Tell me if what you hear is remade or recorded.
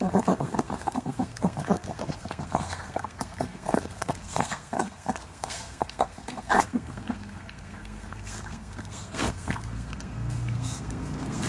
remade